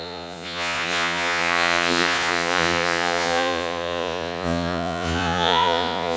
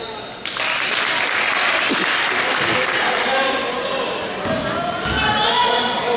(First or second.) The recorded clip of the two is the second